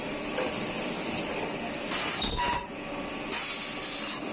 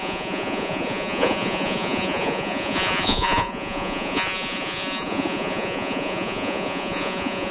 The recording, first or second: first